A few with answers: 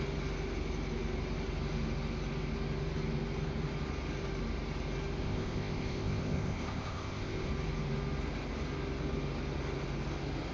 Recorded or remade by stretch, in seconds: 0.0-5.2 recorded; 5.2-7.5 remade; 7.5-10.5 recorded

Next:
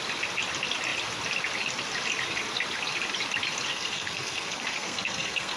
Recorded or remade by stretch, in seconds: 0.0-3.7 recorded; 3.7-5.6 remade

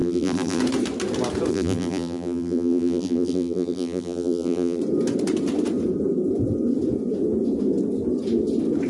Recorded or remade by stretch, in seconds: 0.0-0.6 remade; 0.6-1.5 recorded; 1.5-4.8 remade; 4.8-8.9 recorded

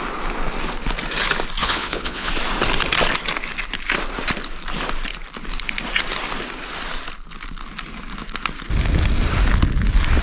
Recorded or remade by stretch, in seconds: 0.0-1.6 recorded; 1.6-2.3 remade; 2.3-10.2 recorded

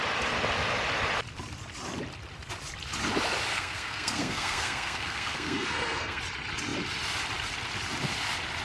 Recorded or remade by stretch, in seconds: 0.0-3.5 recorded; 3.5-6.2 remade; 6.2-8.6 recorded

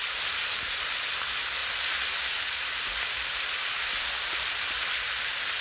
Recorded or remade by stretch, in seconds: 0.0-1.6 recorded; 1.6-4.9 remade; 4.9-5.6 recorded